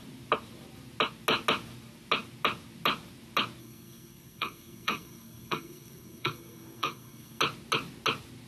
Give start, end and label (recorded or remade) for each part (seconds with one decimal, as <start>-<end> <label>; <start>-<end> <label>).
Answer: 0.0-3.6 recorded; 3.6-7.4 remade; 7.4-8.5 recorded